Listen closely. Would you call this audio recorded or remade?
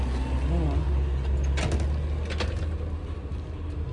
recorded